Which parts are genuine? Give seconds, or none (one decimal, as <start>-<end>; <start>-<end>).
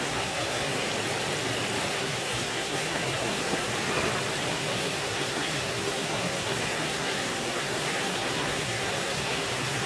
0.9-1.9; 3.7-4.5